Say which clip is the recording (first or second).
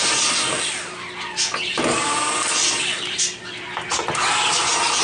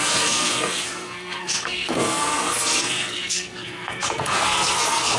first